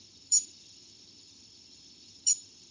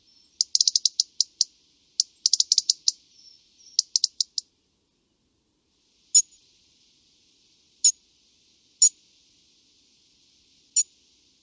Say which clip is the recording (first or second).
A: second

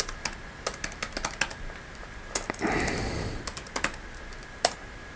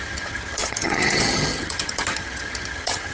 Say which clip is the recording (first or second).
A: first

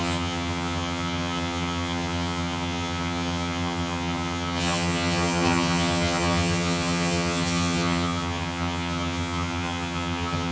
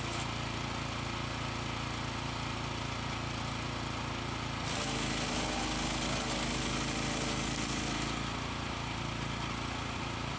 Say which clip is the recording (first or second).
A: second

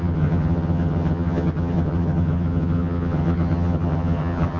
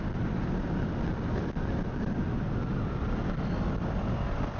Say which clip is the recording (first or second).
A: second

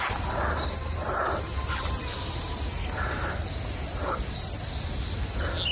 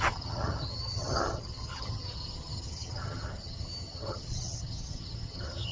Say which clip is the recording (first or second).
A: first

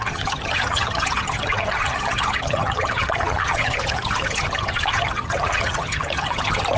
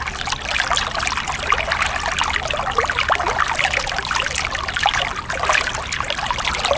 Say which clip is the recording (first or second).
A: second